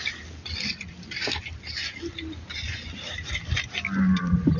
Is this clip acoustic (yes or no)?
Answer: yes